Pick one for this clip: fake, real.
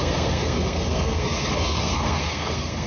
fake